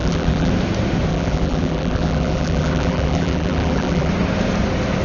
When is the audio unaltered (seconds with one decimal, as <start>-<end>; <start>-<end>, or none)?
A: 0.5-1.1; 4.1-5.0